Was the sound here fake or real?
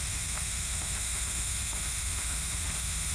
fake